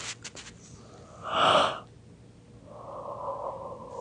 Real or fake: real